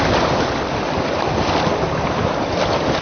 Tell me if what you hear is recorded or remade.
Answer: remade